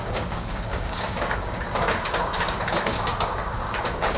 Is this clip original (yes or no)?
no